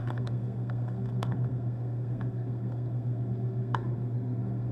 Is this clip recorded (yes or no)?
no